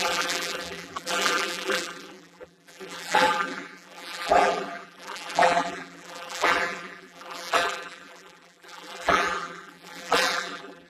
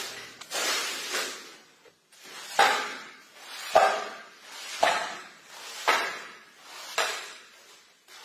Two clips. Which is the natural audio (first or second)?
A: second